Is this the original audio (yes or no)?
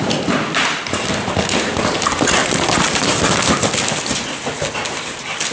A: yes